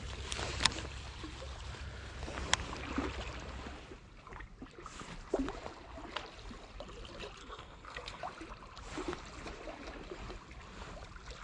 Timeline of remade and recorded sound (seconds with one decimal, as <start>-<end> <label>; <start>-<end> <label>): 0.0-7.4 recorded; 7.4-8.2 remade; 8.2-11.4 recorded